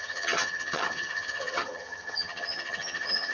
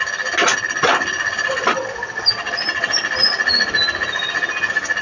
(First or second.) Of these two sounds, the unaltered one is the second